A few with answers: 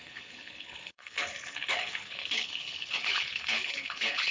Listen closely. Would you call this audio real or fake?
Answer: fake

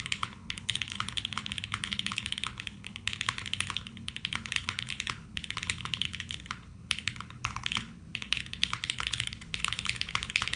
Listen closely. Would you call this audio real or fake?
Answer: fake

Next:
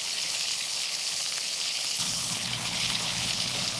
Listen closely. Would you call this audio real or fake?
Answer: fake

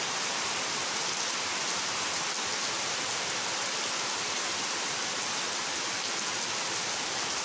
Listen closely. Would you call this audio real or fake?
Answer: real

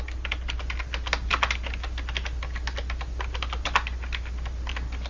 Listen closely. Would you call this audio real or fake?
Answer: real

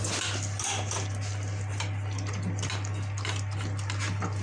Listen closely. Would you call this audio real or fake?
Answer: real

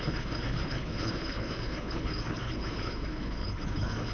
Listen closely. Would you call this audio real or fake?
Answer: fake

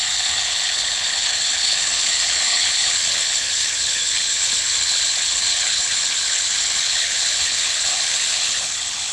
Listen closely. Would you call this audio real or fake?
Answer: fake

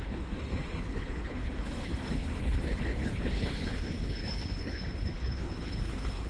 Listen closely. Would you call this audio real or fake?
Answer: fake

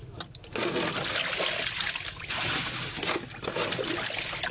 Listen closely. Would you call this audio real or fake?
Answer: real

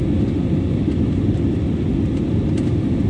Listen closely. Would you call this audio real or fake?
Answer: real